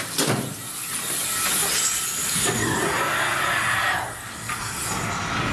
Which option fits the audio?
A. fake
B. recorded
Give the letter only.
B